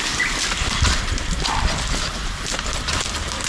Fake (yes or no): no